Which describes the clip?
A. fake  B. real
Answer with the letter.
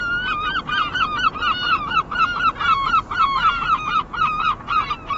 B